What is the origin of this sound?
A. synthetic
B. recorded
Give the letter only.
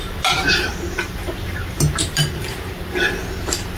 B